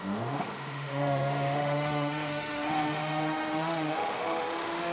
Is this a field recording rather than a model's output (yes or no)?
no